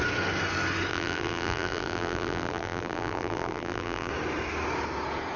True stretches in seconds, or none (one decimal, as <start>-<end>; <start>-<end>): 0.0-0.9; 4.1-5.4